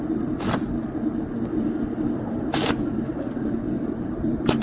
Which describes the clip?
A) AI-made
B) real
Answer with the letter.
B